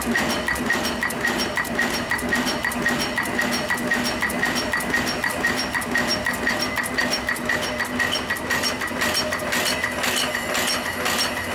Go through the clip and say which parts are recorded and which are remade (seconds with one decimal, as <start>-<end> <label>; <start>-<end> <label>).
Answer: 0.0-11.5 recorded